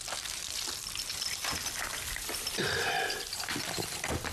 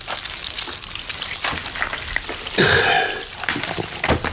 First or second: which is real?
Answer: second